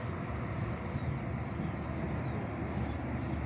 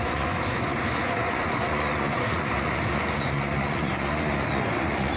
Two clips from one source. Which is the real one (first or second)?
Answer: first